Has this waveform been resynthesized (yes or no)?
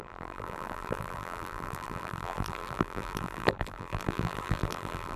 yes